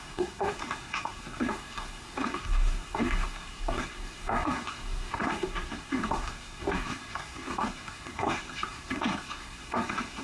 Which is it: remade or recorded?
remade